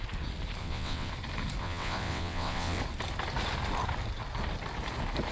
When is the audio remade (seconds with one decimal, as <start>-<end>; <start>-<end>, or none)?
0.6-1.1; 1.6-2.8